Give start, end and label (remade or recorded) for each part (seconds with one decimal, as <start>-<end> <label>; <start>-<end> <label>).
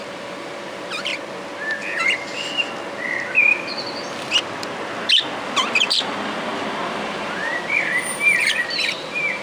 0.0-1.1 remade; 1.1-5.4 recorded; 5.4-9.4 remade